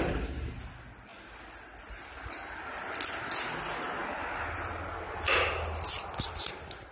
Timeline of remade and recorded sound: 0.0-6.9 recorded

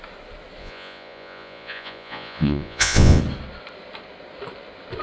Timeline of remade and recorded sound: 0.0-0.6 recorded; 0.6-3.2 remade; 3.2-5.0 recorded

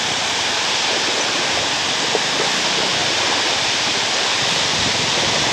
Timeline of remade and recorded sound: 0.0-3.0 recorded; 3.0-3.9 remade; 3.9-5.5 recorded